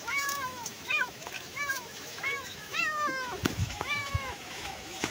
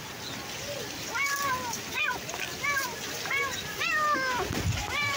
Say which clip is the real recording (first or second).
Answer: second